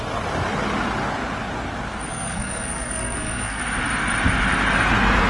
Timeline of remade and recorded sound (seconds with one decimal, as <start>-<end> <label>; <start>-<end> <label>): 0.0-2.1 recorded; 2.1-3.6 remade; 3.6-5.3 recorded